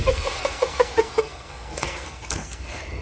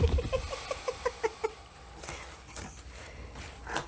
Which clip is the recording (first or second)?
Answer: second